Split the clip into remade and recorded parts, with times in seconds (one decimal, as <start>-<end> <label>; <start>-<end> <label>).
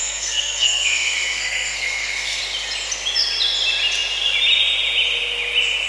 0.0-2.4 remade; 2.4-5.9 recorded